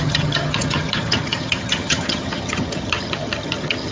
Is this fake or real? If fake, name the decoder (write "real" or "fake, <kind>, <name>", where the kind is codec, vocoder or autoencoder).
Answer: fake, vocoder, HiFi-GAN